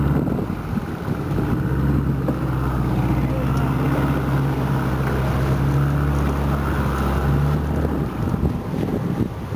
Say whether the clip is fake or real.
real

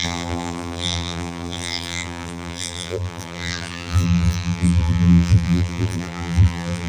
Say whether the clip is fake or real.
fake